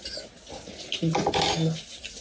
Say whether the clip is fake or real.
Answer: real